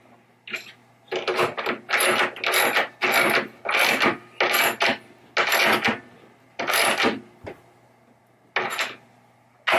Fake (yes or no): no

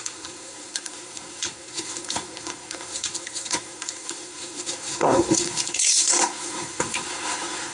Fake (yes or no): yes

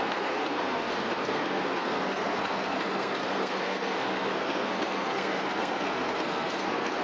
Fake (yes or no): yes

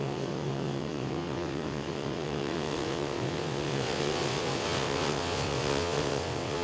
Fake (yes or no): yes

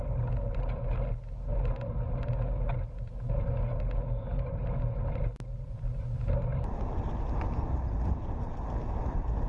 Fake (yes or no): no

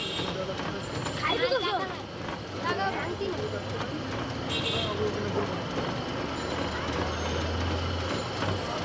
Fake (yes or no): no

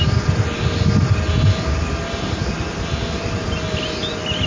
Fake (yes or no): no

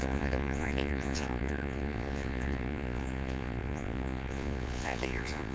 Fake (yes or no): yes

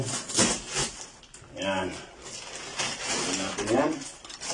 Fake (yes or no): no